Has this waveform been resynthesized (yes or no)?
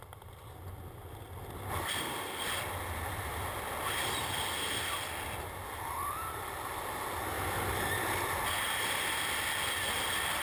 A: no